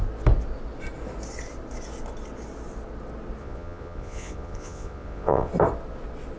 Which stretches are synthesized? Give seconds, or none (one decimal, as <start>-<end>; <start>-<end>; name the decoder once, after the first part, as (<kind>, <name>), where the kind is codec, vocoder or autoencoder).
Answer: 3.4-5.5 (vocoder, Vocos)